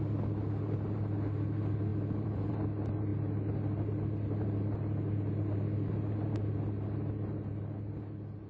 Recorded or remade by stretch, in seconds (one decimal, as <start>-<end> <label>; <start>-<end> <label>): 0.0-1.9 recorded; 1.9-2.5 remade; 2.5-8.5 recorded